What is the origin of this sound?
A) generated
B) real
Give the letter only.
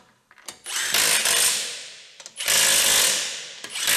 B